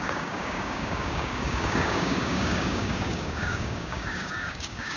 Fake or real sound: fake